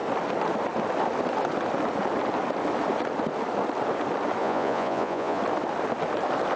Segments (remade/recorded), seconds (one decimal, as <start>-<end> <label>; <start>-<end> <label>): 0.0-4.4 recorded; 4.4-5.4 remade; 5.4-6.6 recorded